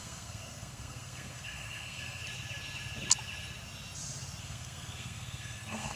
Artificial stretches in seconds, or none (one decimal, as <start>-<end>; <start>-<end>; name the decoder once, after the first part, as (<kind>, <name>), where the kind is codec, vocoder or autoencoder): 0.0-2.2 (codec, SNAC); 4.4-6.0